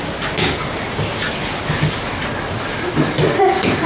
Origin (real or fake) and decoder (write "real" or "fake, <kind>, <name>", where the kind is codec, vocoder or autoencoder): real